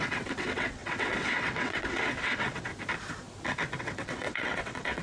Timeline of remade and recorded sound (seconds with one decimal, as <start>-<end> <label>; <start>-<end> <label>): 0.0-2.7 remade; 2.7-3.8 recorded; 3.8-5.0 remade